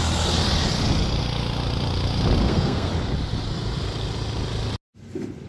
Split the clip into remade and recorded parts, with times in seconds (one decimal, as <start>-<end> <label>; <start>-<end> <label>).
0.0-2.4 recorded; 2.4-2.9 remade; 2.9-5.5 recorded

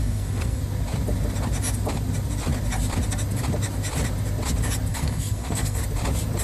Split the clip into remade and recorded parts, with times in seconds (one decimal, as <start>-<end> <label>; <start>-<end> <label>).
0.0-0.6 remade; 0.6-4.9 recorded; 4.9-5.8 remade; 5.8-6.4 recorded

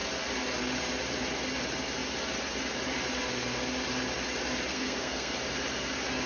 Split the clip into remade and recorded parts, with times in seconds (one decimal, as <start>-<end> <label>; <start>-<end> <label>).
0.0-4.7 recorded; 4.7-5.3 remade; 5.3-6.3 recorded